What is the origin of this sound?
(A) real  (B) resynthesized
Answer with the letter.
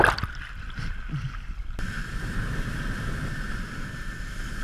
A